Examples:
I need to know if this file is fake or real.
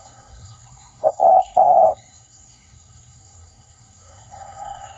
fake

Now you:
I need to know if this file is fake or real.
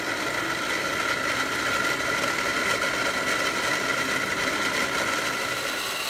real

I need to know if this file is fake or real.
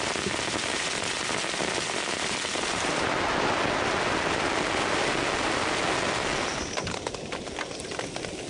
real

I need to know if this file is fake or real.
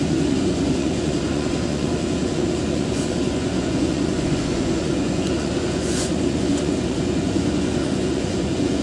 fake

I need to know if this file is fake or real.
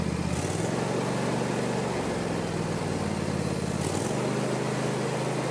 fake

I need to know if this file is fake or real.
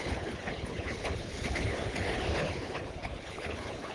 fake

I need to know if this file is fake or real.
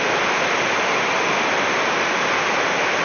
real